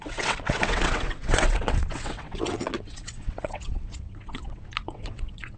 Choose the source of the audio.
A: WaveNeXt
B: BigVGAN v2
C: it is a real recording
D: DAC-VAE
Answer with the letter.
A